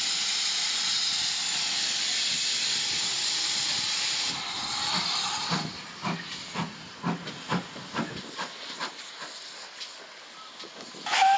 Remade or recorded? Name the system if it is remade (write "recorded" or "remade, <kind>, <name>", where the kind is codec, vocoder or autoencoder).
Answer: recorded